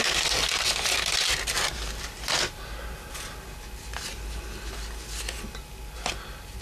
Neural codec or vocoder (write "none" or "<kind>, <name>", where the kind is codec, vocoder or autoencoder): none